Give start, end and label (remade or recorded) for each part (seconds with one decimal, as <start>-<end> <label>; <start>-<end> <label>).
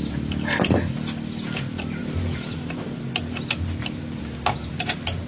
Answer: 0.0-5.3 recorded